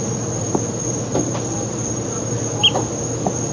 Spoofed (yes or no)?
no